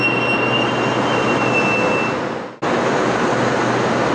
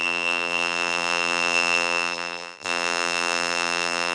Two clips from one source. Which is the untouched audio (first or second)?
first